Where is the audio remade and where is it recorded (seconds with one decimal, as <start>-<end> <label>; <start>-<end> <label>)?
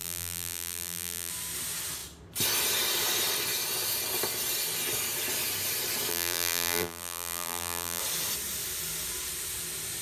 0.0-1.3 remade; 1.3-6.1 recorded; 6.1-8.0 remade; 8.0-10.0 recorded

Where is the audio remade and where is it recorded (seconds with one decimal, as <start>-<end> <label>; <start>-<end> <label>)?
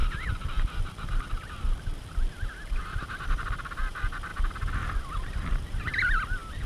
0.0-3.8 remade; 3.8-4.3 recorded; 4.3-5.0 remade; 5.0-6.7 recorded